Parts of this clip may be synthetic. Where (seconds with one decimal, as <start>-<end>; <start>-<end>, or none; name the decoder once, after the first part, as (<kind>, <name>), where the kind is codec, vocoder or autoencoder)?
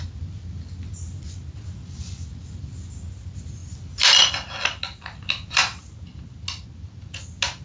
none